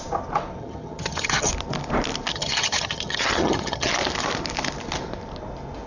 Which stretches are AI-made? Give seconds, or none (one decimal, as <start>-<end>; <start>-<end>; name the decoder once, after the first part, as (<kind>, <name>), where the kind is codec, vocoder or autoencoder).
0.6-1.5 (vocoder, HiFi-GAN); 2.3-3.9